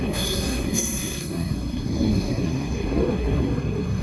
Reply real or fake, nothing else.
fake